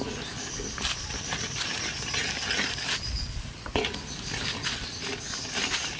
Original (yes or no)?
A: yes